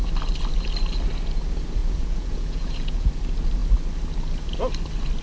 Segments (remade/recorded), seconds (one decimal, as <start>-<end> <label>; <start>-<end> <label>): 0.0-1.8 recorded; 1.8-3.1 remade; 3.1-5.2 recorded